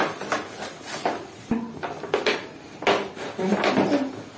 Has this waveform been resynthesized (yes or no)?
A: no